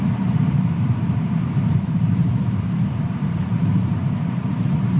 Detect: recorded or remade remade